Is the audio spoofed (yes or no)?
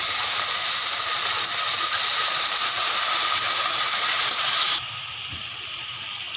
no